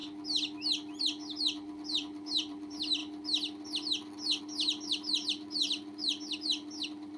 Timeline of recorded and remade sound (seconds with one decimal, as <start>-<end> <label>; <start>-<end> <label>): 0.0-1.0 recorded; 1.0-3.0 remade; 3.0-4.4 recorded; 4.4-7.2 remade

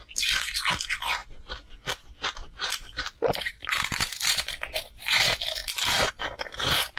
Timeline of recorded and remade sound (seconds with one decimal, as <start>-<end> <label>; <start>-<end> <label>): 0.0-1.2 recorded; 1.2-1.9 remade; 1.9-2.4 recorded; 2.4-4.0 remade; 4.0-5.6 recorded; 5.6-7.0 remade